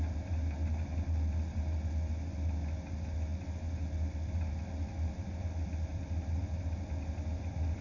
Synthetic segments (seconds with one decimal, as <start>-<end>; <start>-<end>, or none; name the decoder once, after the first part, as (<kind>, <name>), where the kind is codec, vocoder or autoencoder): none